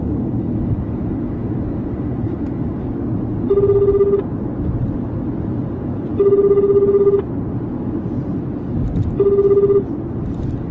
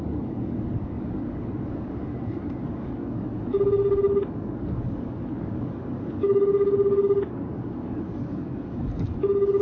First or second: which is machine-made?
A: second